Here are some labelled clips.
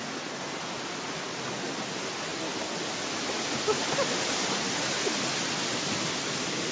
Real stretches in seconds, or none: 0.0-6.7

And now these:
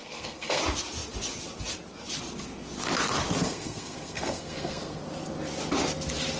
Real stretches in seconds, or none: 0.6-3.4; 5.0-6.4

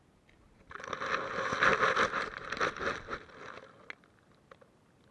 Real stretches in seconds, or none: 0.0-1.7; 3.3-5.1